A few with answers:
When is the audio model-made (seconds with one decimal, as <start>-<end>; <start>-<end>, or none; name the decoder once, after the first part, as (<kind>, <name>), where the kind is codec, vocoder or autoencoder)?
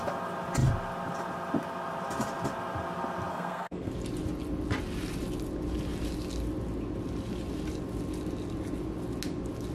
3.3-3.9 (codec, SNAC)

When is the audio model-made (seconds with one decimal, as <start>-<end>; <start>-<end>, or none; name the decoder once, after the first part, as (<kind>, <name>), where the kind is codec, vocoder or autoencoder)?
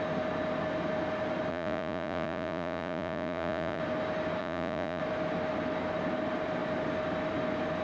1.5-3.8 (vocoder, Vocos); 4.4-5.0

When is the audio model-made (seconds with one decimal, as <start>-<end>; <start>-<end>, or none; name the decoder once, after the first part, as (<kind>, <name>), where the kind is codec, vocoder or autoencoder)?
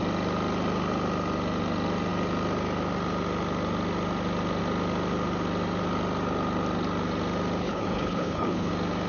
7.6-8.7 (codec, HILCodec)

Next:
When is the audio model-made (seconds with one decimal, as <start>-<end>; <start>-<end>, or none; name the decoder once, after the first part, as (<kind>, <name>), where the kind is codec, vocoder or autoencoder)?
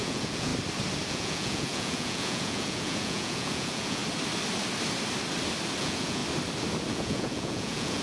0.0-0.5 (vocoder, Vocos); 1.1-4.0; 5.8-6.2; 6.9-8.0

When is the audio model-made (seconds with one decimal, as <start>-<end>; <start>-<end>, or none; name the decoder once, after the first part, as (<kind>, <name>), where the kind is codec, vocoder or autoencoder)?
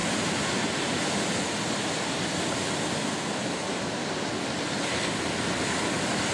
none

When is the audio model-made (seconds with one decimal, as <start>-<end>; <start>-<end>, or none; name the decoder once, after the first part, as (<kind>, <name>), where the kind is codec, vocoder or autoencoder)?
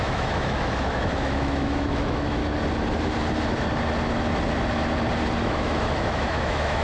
0.0-2.4 (autoencoder, DAC-VAE); 5.4-6.8